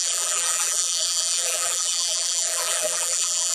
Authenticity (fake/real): fake